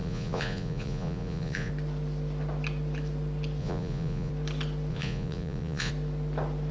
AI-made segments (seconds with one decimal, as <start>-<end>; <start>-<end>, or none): 0.0-1.7; 3.6-4.3; 4.9-5.9